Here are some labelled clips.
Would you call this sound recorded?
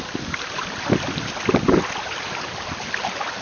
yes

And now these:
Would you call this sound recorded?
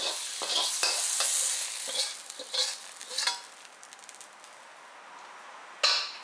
yes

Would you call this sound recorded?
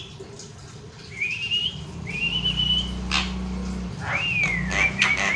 yes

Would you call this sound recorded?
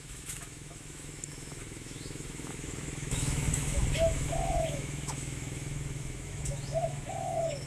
no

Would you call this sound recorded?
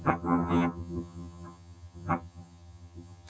no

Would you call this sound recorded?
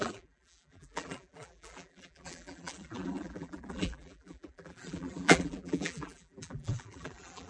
no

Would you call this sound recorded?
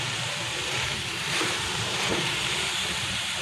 no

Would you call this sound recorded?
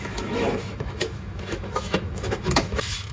no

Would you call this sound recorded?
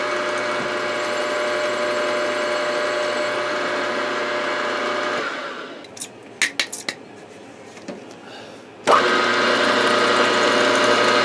yes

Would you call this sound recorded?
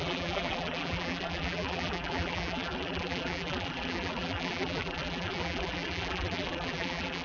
no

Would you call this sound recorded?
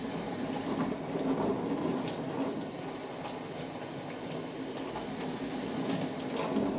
yes